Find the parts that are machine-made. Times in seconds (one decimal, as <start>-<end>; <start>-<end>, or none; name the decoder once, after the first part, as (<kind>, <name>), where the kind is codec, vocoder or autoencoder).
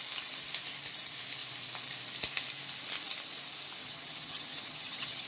3.8-5.3 (vocoder, HiFi-GAN)